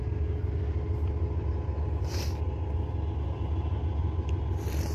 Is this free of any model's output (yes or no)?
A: yes